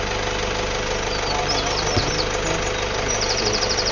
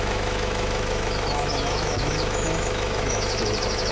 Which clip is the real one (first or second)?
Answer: first